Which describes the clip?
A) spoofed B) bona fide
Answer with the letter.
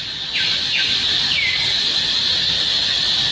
B